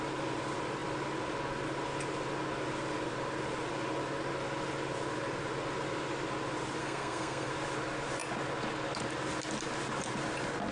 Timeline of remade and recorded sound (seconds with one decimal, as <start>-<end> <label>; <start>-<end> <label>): 0.0-6.8 recorded; 6.8-7.5 remade; 7.5-10.7 recorded